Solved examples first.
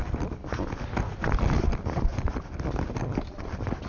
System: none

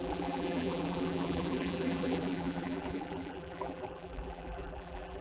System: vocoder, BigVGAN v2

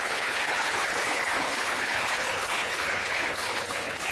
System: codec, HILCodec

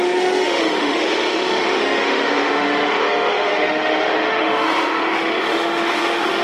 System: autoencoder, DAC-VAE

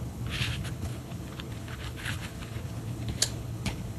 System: codec, HILCodec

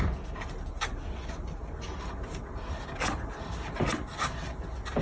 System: none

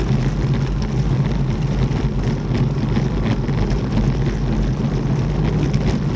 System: none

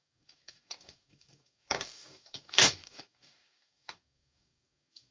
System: codec, DAC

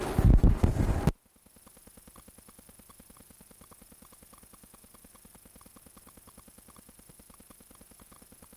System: none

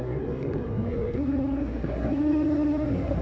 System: codec, SNAC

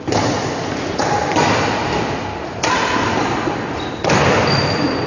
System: none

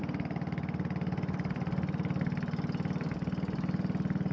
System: none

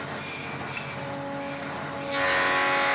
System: none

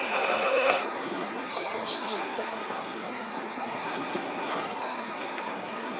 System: codec, SNAC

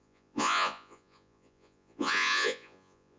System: vocoder, Vocos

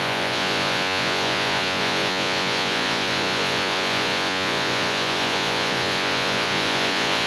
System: vocoder, Vocos